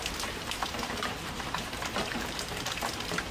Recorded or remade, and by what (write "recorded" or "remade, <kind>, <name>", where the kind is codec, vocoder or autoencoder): remade, vocoder, BigVGAN v2